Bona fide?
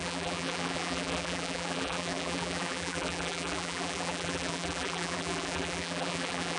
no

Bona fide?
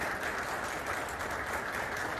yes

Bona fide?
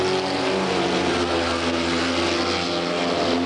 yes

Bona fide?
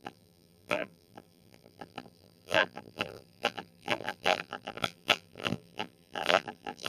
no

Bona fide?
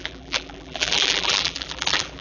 no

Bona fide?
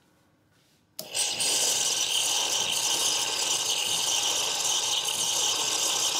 yes